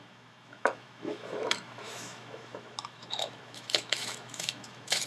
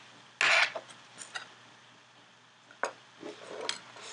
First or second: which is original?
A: second